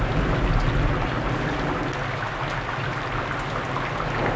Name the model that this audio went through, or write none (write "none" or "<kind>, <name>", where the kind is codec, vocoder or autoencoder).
none